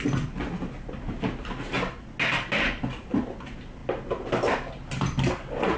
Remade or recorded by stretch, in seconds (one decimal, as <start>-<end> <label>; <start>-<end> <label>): 0.0-5.8 recorded